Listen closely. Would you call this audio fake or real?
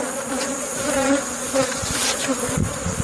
fake